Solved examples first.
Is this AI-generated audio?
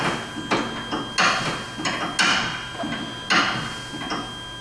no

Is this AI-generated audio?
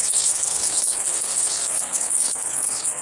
yes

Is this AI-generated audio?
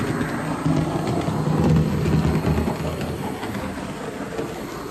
no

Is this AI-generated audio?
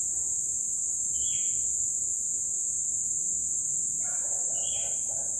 no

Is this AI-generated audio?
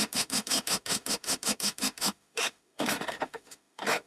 yes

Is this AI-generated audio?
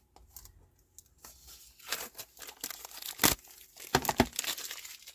no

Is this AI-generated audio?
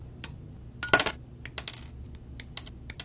no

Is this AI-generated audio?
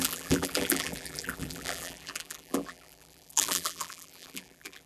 yes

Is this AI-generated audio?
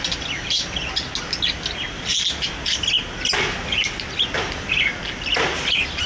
no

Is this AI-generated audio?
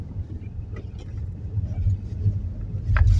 no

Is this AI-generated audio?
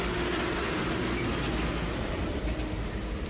no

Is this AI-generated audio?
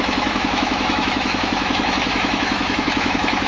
yes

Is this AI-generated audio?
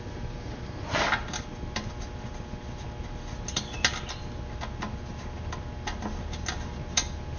no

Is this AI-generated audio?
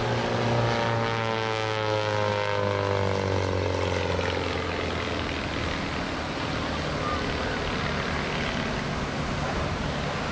no